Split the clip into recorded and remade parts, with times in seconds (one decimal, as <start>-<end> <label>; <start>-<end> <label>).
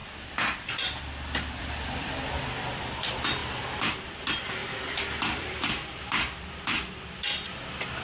0.0-1.6 recorded; 1.6-3.4 remade; 3.4-3.9 recorded; 3.9-4.6 remade; 4.6-5.4 recorded; 5.4-8.0 remade